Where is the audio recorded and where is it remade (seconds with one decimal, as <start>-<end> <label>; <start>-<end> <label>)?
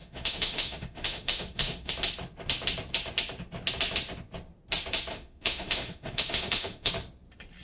0.0-1.9 remade; 1.9-5.1 recorded; 5.1-6.9 remade; 6.9-7.6 recorded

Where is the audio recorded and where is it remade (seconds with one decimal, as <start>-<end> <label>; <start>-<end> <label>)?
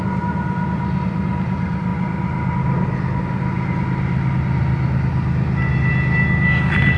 0.0-7.0 recorded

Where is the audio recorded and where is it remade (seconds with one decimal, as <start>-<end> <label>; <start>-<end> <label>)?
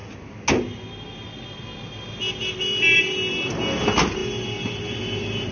0.0-5.5 recorded